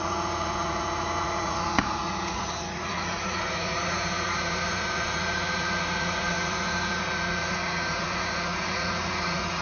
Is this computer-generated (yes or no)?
yes